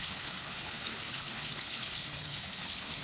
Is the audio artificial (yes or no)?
yes